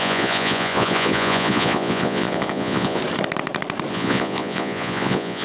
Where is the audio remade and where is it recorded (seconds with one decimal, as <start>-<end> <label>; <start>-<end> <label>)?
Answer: 0.0-3.0 remade; 3.0-3.9 recorded; 3.9-5.4 remade